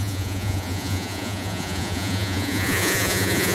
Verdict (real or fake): fake